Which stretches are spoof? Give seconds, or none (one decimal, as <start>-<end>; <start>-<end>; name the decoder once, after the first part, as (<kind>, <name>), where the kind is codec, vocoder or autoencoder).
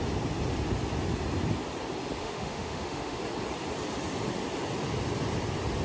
2.2-3.2 (autoencoder, DAC-VAE)